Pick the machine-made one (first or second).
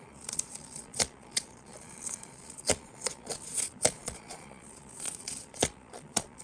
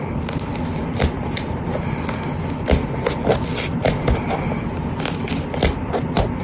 first